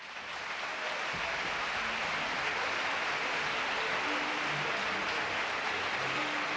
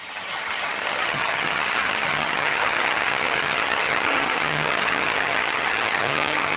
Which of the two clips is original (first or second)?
first